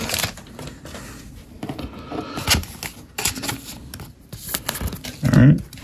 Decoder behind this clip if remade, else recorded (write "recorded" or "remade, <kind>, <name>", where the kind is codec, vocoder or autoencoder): recorded